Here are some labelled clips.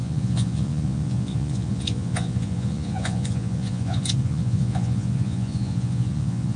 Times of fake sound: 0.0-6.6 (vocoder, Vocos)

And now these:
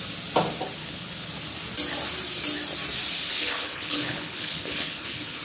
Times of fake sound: 0.8-1.3 (codec, HILCodec); 3.3-5.4

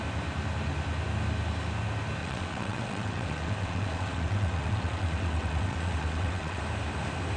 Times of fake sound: 2.2-6.6 (vocoder, WaveNeXt)

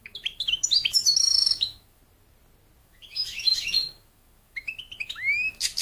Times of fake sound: 0.0-2.0 (autoencoder, DAC-VAE); 2.8-5.8

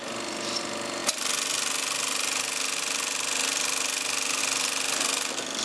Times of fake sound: none

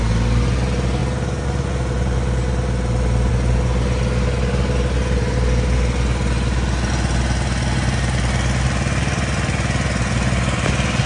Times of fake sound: none

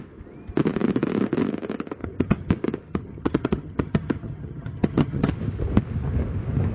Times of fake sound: 2.0-2.5 (vocoder, HiFi-GAN); 2.9-5.3

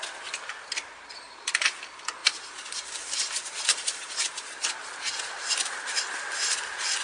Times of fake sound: 2.2-4.7 (vocoder, BigVGAN v2); 5.5-7.0